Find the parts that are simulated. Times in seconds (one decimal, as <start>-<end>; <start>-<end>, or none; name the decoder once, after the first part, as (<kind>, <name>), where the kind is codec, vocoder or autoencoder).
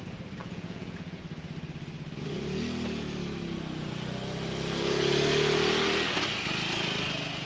0.4-1.2 (vocoder, Vocos)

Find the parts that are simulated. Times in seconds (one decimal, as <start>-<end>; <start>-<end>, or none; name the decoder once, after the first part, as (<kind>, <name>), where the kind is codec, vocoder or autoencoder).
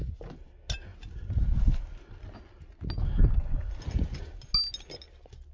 none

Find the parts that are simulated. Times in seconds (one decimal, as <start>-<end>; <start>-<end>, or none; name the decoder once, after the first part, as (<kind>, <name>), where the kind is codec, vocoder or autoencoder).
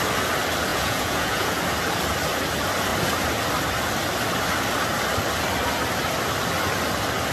0.7-1.6 (vocoder, Vocos)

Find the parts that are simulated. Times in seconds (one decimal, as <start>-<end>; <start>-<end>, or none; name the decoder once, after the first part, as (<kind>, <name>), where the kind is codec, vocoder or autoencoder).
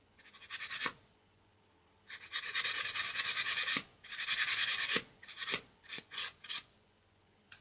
0.0-1.5 (vocoder, Vocos); 2.9-7.6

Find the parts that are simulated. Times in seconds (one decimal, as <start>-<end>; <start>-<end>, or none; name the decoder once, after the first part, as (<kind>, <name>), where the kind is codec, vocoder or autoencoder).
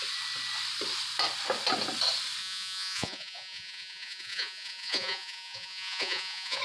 2.4-6.6 (vocoder, Vocos)